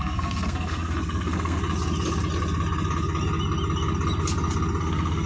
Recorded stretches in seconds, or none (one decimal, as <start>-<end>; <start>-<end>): 1.6-4.8